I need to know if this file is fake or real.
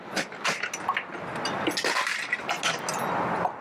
real